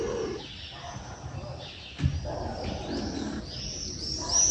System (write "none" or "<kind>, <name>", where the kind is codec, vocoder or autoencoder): none